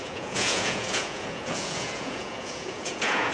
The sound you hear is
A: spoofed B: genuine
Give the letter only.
A